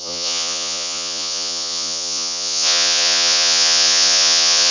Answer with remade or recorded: remade